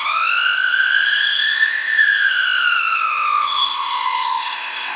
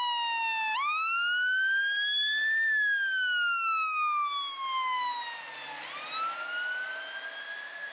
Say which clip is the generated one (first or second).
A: first